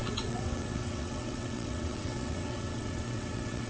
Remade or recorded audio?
remade